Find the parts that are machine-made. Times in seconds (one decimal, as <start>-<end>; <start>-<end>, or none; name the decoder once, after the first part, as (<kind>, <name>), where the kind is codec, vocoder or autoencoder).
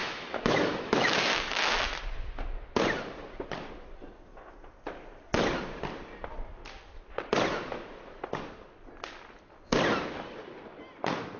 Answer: 0.0-2.0 (autoencoder, DAC-VAE)